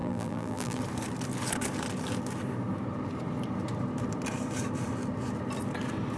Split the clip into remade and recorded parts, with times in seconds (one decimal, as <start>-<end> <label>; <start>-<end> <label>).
0.0-0.8 remade; 0.8-6.2 recorded